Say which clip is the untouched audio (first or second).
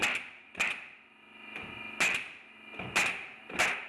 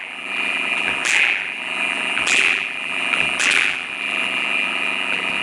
first